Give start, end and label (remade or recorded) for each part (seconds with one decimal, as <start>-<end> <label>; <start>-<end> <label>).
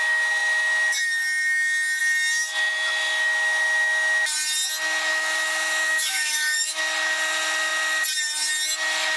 0.0-5.1 recorded; 5.1-6.8 remade; 6.8-9.2 recorded